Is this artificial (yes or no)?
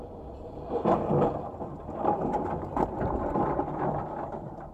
no